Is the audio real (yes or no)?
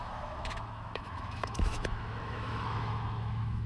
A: no